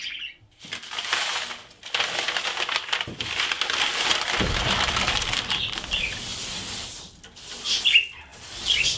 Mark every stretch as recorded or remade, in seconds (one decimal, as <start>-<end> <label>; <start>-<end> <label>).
0.0-6.3 recorded; 6.3-6.9 remade; 6.9-9.0 recorded